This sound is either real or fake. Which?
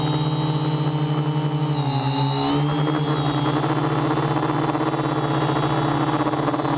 real